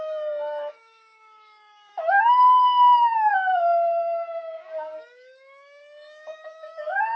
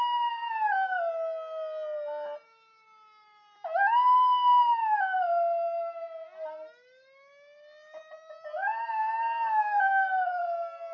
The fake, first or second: first